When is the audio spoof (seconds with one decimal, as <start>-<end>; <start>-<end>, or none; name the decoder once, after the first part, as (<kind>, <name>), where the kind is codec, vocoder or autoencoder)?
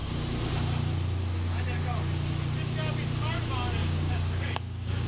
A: 3.8-5.1 (codec, DAC)